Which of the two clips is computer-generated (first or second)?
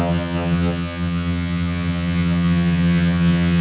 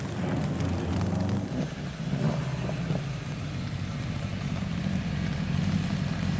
first